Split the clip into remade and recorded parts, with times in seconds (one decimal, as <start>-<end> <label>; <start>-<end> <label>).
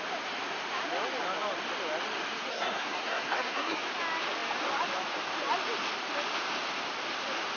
0.0-2.5 recorded; 2.5-3.8 remade; 3.8-7.6 recorded